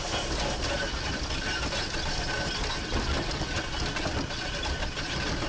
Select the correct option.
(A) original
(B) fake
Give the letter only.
A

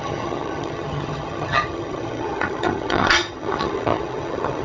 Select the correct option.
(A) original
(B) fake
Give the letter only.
B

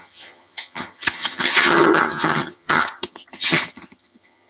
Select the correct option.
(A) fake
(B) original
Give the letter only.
A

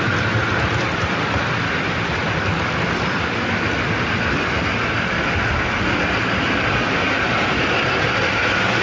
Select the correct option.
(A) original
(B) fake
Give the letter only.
A